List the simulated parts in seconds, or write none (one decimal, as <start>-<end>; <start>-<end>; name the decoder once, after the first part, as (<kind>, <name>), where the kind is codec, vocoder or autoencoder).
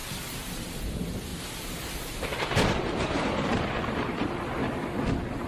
0.0-0.7 (vocoder, BigVGAN v2); 1.3-4.3